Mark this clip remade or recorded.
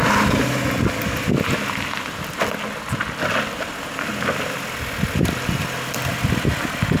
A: recorded